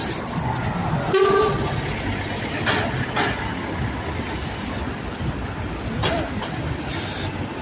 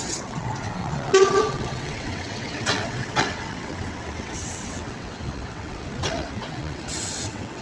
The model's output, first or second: second